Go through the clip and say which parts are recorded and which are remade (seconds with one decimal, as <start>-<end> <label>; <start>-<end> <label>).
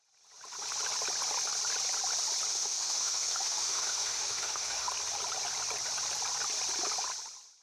0.0-2.5 recorded; 2.5-4.9 remade; 4.9-7.6 recorded